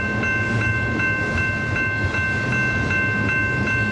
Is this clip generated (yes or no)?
no